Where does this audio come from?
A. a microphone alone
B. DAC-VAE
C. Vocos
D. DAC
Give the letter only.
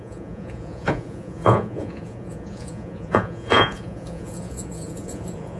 C